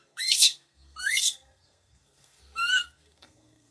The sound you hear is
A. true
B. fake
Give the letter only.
B